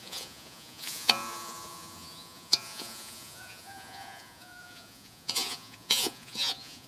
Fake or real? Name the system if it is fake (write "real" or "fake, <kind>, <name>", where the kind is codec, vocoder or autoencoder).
fake, vocoder, Vocos